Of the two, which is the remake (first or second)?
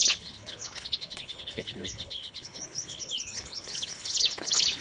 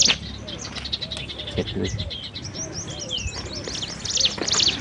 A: first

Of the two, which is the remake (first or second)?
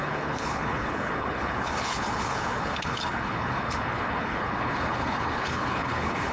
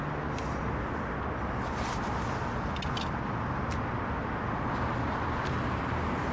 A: first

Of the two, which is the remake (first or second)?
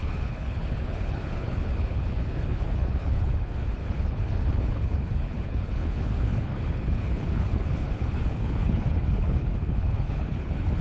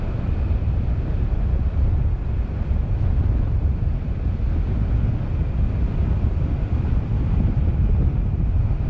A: first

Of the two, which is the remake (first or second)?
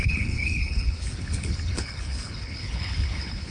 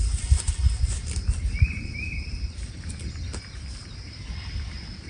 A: first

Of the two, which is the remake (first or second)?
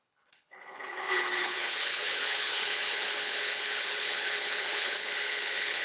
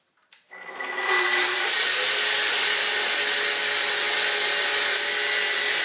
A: first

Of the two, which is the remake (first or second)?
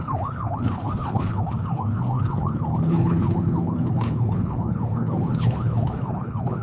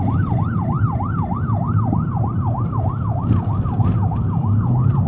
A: first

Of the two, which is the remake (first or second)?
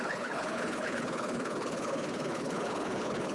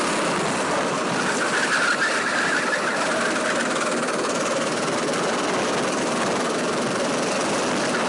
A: first